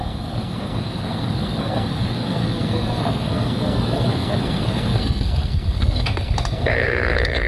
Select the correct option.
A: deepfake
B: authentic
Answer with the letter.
A